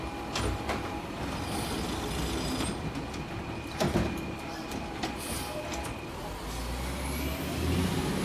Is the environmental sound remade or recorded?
recorded